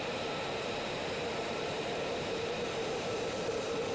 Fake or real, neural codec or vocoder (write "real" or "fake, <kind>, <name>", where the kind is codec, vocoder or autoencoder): fake, vocoder, BigVGAN v2